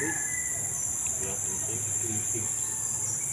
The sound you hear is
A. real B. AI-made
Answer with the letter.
A